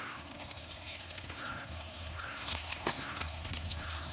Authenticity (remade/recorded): remade